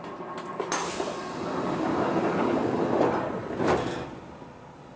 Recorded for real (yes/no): yes